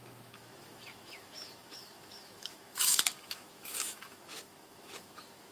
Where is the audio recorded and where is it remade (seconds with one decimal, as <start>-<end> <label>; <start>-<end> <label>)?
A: 0.0-5.5 remade